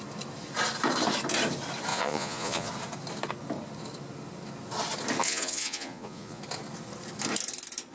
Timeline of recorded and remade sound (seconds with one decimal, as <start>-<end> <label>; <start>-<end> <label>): 0.0-1.9 recorded; 1.9-2.7 remade; 2.7-5.2 recorded; 5.2-6.4 remade; 6.4-7.9 recorded